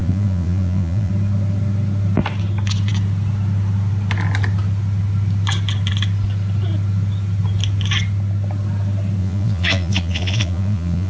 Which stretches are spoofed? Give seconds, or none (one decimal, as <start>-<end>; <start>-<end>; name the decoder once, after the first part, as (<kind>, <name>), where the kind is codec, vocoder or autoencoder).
0.0-1.1 (vocoder, Vocos); 9.2-11.1